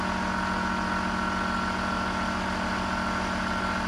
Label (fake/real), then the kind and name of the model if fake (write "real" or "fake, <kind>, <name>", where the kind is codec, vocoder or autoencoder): real